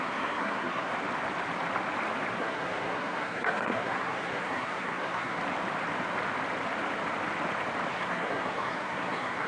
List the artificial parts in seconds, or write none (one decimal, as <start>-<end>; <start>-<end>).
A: 0.0-0.9; 2.4-5.4; 7.9-9.5